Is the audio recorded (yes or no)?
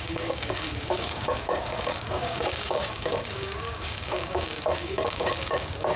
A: no